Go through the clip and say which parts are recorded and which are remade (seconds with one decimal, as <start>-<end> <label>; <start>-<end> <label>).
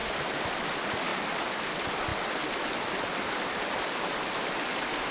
0.0-0.5 remade; 0.5-1.1 recorded; 1.1-1.6 remade; 1.6-5.1 recorded